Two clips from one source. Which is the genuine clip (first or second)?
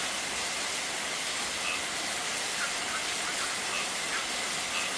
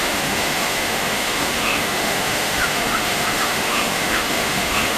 first